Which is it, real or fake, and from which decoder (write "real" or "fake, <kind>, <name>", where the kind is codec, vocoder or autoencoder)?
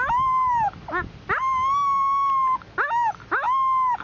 real